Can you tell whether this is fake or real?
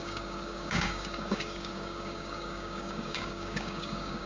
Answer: fake